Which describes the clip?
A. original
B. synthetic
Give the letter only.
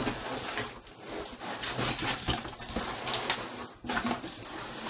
A